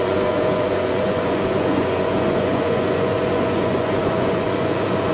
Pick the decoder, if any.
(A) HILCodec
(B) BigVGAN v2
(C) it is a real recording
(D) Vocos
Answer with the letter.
D